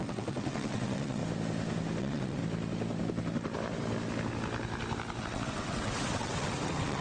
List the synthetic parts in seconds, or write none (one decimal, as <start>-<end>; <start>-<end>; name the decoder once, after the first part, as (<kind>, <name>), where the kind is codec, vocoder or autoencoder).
0.0-1.2 (vocoder, WaveNeXt); 2.0-2.4; 5.2-7.0